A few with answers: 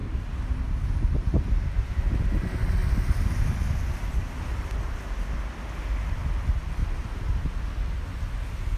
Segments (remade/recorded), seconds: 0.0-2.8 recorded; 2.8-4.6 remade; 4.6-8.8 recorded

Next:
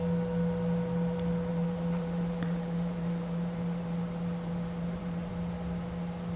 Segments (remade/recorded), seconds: 0.0-1.5 recorded; 1.5-5.3 remade; 5.3-6.4 recorded